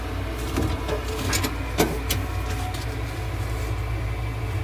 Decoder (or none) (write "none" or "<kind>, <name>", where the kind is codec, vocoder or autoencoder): none